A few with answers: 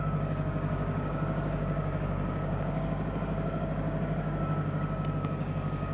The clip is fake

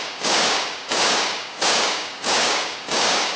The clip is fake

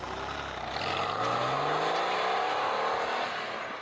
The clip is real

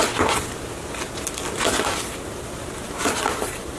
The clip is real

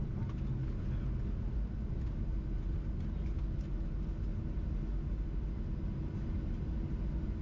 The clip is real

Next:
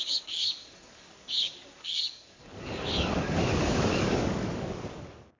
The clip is fake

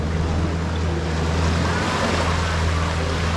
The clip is real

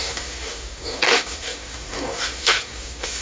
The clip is fake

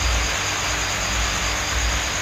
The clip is real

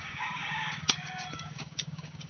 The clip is fake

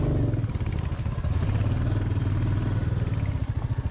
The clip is real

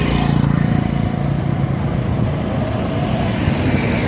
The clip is real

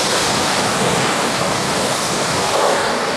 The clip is fake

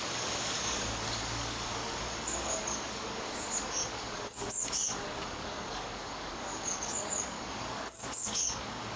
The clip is fake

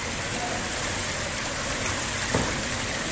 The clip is real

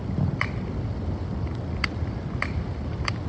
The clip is real